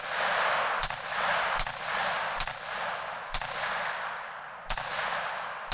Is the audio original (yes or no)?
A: yes